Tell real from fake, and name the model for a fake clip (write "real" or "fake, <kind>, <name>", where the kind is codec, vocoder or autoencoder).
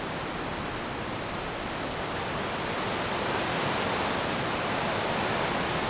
real